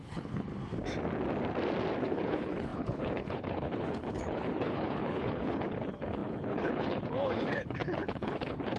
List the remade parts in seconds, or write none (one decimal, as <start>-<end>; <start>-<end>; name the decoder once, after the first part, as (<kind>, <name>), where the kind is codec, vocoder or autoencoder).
0.0-0.5 (codec, HILCodec); 2.0-8.8